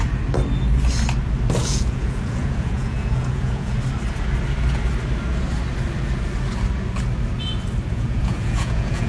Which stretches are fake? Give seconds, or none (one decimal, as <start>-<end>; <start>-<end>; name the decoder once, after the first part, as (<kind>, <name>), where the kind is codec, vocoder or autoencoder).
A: 1.6-3.8 (vocoder, Vocos); 7.9-9.1